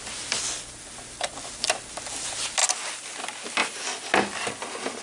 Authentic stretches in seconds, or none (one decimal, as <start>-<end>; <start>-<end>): 0.0-5.0